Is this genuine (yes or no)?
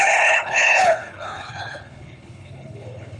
no